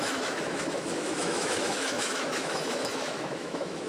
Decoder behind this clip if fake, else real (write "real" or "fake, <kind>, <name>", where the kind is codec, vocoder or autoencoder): fake, autoencoder, DAC-VAE